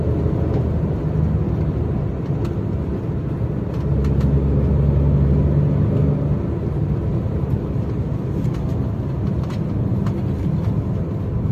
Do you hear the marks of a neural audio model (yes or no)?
no